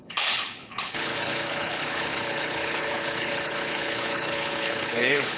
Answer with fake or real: fake